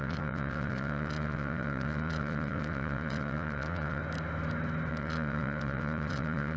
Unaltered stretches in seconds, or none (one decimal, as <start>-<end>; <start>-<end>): 4.0-4.9